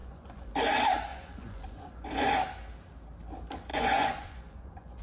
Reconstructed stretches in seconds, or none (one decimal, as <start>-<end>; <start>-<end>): 0.0-0.5; 1.1-2.3; 3.7-5.0